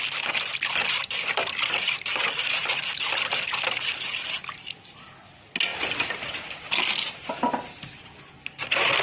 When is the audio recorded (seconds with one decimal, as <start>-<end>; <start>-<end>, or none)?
0.0-9.0